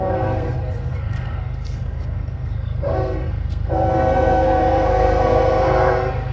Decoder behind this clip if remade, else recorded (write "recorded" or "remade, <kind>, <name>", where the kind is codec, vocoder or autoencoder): remade, codec, SNAC